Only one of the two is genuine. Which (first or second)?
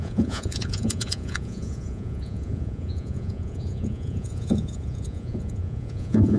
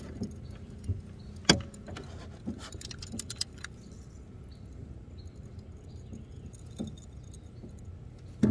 second